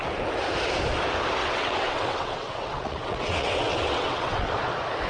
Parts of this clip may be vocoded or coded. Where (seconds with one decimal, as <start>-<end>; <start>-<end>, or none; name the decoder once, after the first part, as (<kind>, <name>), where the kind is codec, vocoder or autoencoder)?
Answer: 1.4-4.5 (vocoder, WaveNeXt)